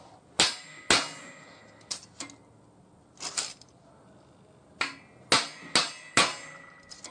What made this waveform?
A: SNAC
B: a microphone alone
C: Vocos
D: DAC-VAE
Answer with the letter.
B